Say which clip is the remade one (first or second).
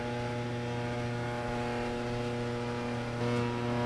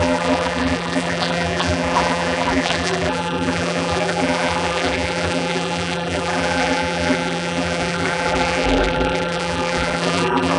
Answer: second